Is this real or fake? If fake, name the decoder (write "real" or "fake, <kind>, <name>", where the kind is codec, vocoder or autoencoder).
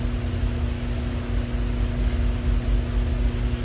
real